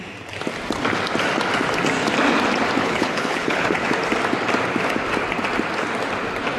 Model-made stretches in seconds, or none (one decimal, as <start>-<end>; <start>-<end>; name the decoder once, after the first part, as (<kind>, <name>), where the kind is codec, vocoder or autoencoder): 2.8-3.9 (codec, HILCodec)